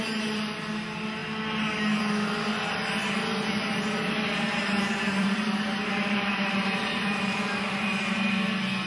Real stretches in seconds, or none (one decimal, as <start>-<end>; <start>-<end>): 0.0-3.3; 4.0-4.6; 8.3-8.9